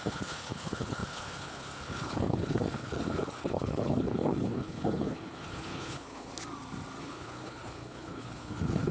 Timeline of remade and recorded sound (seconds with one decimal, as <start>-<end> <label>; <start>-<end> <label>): 0.0-6.3 remade; 6.3-7.0 recorded; 7.0-8.9 remade